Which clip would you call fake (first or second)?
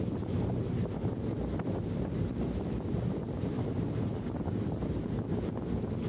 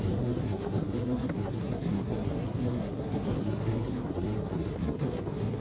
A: second